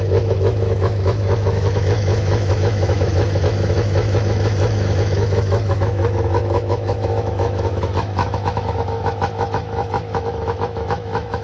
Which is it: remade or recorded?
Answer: remade